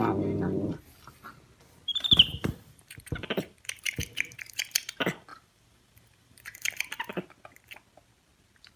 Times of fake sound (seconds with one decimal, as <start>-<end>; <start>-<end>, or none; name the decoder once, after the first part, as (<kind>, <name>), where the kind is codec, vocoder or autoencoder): 2.3-4.6 (vocoder, BigVGAN v2); 5.3-6.8